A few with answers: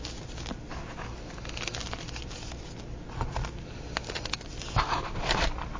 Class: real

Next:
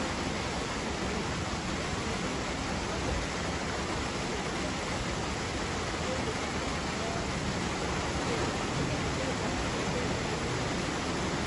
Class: real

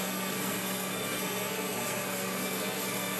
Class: fake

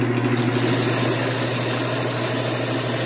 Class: real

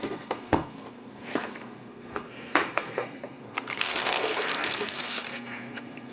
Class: fake